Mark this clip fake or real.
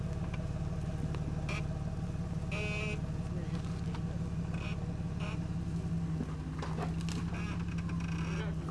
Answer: real